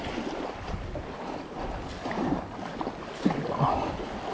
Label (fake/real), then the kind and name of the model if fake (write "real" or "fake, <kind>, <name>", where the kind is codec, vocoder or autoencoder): real